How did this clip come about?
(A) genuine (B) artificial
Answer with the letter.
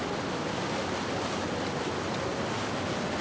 A